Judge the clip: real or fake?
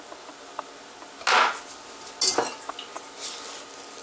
real